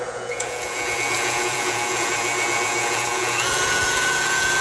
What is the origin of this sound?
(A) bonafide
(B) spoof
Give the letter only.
B